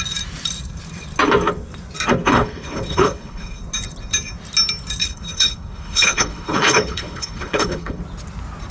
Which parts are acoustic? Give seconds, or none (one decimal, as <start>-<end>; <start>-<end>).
0.0-2.3; 3.6-5.0; 8.0-8.7